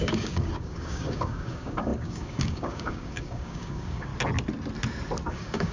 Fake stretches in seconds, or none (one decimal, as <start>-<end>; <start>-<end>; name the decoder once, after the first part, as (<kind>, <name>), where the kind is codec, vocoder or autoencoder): 0.0-4.1 (codec, DAC); 5.3-5.7